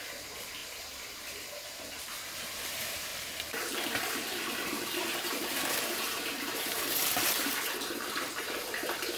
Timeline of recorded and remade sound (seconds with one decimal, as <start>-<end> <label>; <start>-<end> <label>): 0.0-9.2 remade